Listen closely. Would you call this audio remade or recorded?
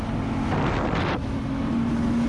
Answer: recorded